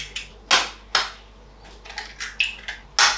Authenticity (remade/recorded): recorded